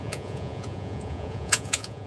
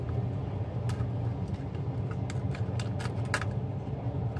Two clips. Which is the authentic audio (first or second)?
second